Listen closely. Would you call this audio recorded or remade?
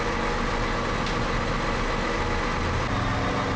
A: recorded